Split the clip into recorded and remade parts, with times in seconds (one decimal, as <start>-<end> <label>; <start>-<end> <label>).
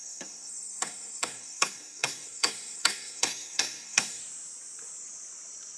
0.0-4.2 remade; 4.2-5.8 recorded